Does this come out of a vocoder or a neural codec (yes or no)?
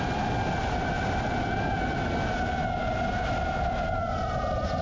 no